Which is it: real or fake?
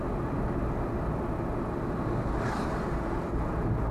real